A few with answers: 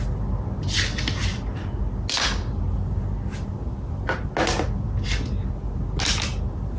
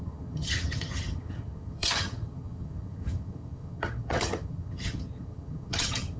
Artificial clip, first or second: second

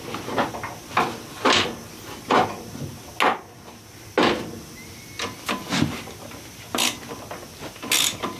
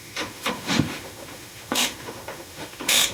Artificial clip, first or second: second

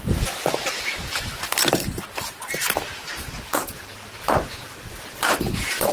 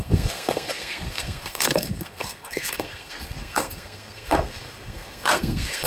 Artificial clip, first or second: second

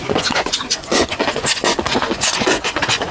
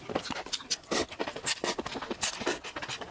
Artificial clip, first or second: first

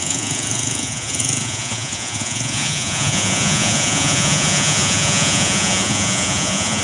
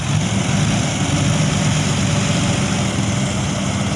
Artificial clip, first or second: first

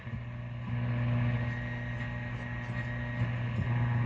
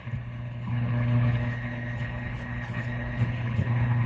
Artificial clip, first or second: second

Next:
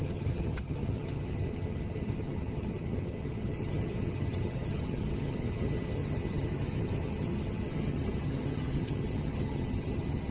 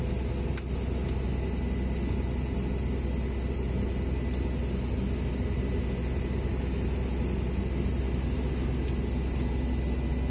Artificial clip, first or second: first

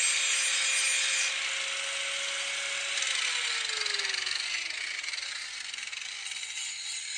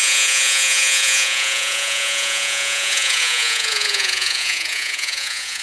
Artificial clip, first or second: second